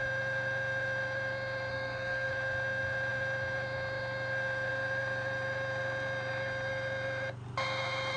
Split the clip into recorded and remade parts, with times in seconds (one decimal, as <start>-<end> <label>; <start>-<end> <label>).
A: 0.0-1.7 recorded; 1.7-2.3 remade; 2.3-8.2 recorded